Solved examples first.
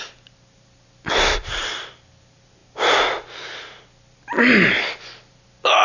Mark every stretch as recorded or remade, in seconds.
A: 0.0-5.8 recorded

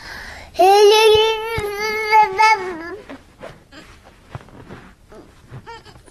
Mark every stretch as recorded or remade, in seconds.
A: 0.0-6.1 recorded